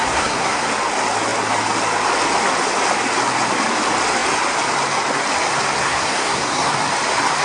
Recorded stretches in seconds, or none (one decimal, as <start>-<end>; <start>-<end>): 0.7-5.8; 6.7-7.4